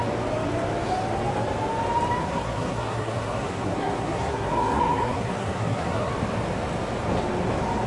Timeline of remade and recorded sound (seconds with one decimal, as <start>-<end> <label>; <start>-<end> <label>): 0.0-2.2 recorded; 2.2-6.1 remade; 6.1-7.9 recorded